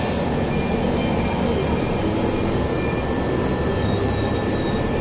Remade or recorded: recorded